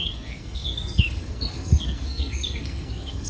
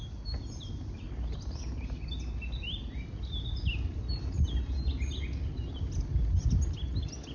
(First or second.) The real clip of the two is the second